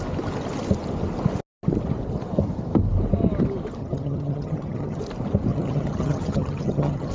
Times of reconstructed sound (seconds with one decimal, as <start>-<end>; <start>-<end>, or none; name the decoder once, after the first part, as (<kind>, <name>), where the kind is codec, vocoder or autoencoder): 3.8-5.0 (vocoder, HiFi-GAN); 5.5-7.1